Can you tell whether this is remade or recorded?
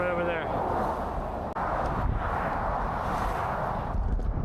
recorded